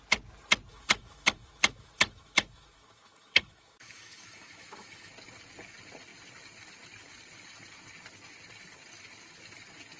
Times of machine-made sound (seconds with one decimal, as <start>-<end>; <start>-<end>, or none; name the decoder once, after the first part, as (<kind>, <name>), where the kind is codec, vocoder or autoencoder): 0.7-5.1 (autoencoder, DAC-VAE)